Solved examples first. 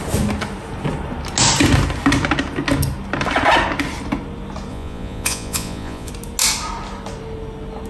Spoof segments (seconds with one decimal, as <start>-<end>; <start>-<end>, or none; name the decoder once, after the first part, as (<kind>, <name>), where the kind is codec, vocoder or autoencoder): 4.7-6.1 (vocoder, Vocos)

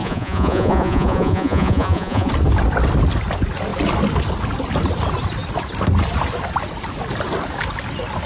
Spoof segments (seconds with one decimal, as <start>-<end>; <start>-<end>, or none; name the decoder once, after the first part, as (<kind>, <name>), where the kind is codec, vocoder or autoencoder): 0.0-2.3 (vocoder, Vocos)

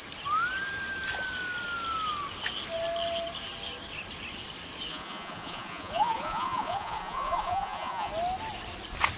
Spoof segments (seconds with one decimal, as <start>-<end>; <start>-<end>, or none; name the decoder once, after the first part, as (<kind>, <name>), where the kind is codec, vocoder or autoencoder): 4.9-8.1 (vocoder, Vocos)

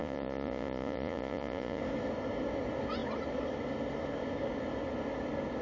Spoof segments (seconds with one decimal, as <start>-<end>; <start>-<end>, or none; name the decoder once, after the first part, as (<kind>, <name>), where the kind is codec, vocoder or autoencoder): 0.0-1.8 (vocoder, Vocos)

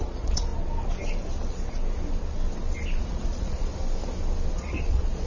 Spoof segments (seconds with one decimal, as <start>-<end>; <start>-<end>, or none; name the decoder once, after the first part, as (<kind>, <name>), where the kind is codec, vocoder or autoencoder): 0.0-0.5 (vocoder, Vocos); 3.0-3.7; 4.5-5.3

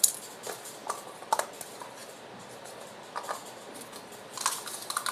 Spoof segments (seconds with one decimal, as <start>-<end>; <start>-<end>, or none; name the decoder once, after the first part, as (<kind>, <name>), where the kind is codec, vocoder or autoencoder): none

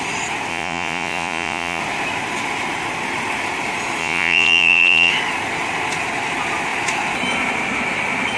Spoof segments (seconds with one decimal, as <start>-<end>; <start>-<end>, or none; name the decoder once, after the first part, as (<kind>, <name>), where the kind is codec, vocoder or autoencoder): 0.5-1.8 (vocoder, Vocos); 4.0-5.1

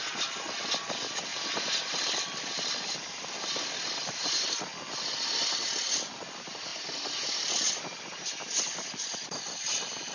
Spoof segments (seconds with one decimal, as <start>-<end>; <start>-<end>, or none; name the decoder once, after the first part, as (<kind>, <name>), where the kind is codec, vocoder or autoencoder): none